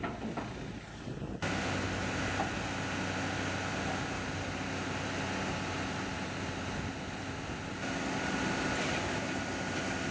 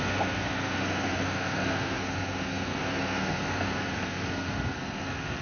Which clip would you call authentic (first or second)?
first